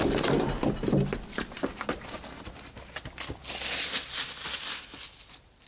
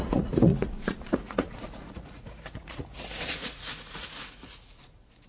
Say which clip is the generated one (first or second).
second